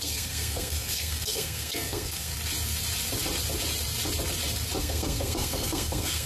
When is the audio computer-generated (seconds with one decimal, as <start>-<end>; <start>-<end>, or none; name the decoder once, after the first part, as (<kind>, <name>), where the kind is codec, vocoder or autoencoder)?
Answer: 0.0-2.3 (codec, SNAC); 4.8-6.3